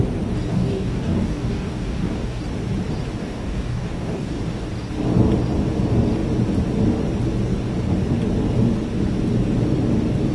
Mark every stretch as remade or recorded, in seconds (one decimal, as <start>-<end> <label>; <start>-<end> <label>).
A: 0.0-0.5 recorded; 0.5-2.4 remade; 2.4-3.2 recorded; 3.2-4.4 remade; 4.4-10.3 recorded